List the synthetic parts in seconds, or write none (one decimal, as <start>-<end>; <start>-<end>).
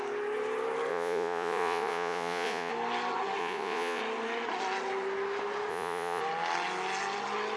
0.9-2.7; 3.4-4.0; 5.7-6.2